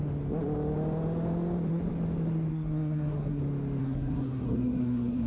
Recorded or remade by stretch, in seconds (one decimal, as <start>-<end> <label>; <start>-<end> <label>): 0.0-2.5 recorded; 2.5-3.4 remade; 3.4-3.8 recorded; 3.8-5.3 remade